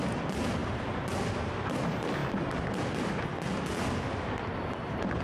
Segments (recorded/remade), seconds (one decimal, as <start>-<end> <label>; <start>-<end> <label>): 0.0-5.2 recorded